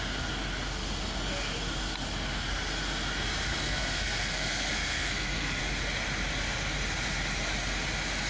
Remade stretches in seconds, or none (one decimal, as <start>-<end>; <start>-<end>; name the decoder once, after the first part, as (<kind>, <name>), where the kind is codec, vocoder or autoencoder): 3.5-5.6 (codec, SNAC)